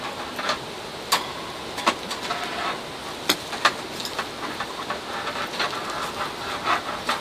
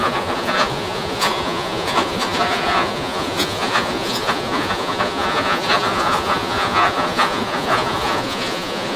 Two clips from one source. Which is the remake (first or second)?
second